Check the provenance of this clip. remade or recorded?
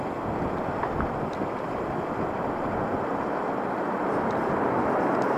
recorded